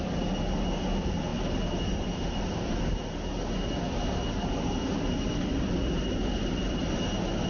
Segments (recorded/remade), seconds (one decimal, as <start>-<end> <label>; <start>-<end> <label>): 0.0-1.3 recorded; 1.3-3.1 remade; 3.1-5.3 recorded; 5.3-6.8 remade; 6.8-7.5 recorded